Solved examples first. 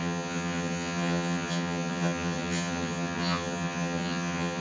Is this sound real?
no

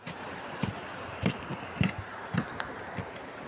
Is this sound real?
yes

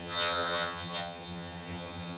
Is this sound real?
no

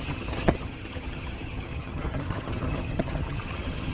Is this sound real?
no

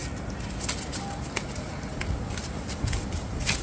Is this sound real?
yes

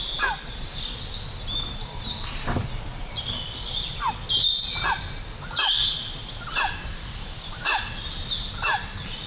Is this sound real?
yes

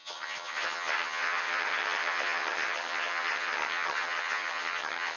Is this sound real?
no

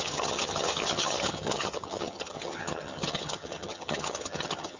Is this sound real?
no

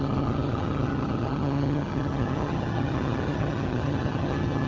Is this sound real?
no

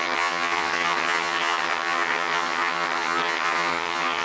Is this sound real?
no